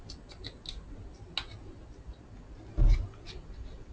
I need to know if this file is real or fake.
real